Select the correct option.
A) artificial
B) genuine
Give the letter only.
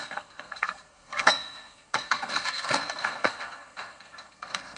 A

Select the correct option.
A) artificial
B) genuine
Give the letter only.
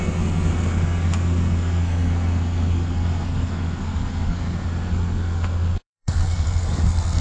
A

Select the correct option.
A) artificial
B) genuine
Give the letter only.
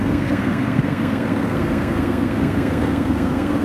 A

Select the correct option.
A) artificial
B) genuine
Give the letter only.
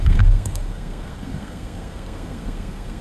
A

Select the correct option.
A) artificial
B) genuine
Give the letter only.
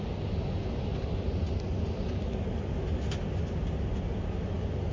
B